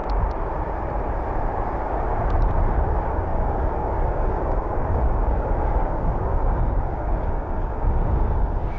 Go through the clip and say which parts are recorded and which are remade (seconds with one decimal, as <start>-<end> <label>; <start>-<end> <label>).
0.0-2.7 recorded; 2.7-8.8 remade